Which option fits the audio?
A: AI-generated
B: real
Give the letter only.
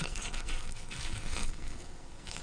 A